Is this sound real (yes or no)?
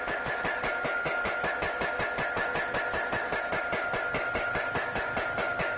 yes